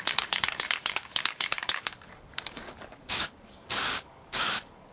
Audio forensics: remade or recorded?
remade